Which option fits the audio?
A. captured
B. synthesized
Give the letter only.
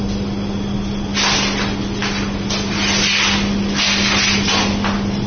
A